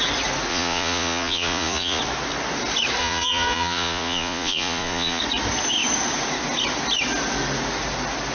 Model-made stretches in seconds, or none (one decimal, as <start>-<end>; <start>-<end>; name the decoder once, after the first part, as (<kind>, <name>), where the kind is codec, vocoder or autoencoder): 0.5-2.0 (vocoder, Vocos); 3.0-5.2